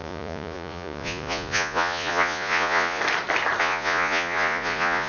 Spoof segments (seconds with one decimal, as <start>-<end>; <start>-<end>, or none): 0.0-3.0; 3.6-5.1